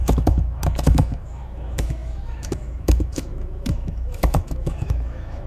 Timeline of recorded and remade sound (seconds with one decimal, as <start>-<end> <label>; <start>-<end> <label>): 0.0-5.5 remade